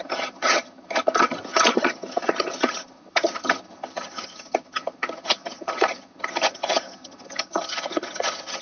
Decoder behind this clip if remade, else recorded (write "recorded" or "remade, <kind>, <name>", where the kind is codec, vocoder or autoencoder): remade, vocoder, HiFi-GAN